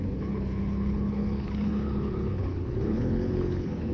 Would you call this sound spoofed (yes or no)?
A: yes